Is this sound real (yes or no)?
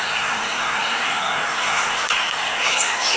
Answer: no